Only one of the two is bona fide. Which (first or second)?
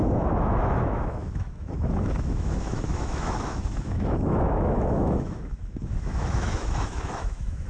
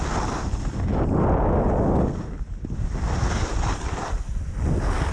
second